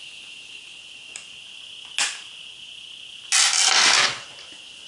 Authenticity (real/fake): real